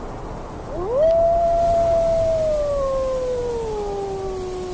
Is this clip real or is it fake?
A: real